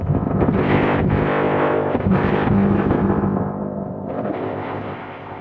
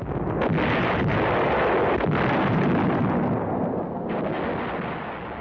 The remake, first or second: first